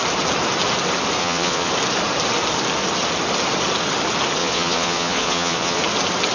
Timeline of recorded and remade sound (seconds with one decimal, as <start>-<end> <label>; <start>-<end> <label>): 0.0-1.2 recorded; 1.2-1.7 remade; 1.7-4.4 recorded; 4.4-5.8 remade; 5.8-6.3 recorded